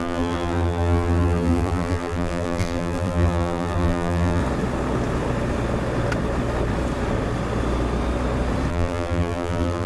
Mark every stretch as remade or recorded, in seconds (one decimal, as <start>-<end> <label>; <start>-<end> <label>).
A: 0.0-4.4 remade; 4.4-8.7 recorded; 8.7-9.9 remade